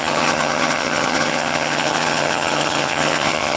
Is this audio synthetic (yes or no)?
yes